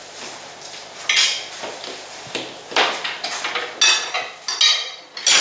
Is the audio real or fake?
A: real